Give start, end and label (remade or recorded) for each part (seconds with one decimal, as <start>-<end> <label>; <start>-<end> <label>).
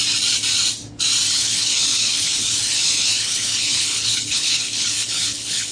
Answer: 0.0-1.3 recorded; 1.3-5.7 remade